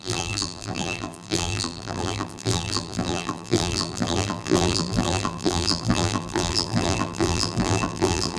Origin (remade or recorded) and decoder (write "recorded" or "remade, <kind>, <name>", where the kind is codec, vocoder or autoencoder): remade, vocoder, BigVGAN v2